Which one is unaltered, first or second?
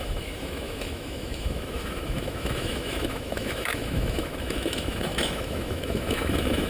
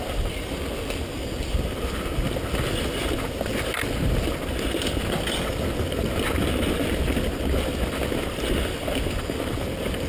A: second